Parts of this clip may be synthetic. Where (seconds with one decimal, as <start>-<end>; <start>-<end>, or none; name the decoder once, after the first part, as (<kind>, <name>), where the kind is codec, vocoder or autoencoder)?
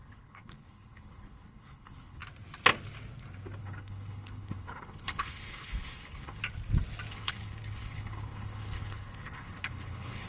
0.0-2.2 (codec, HILCodec); 3.6-6.4; 7.1-10.3